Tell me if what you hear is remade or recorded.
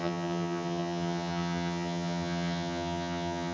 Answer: remade